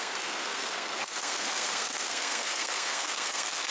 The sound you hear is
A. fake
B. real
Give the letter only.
A